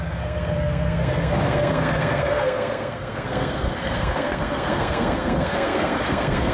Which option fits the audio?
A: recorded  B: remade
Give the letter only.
B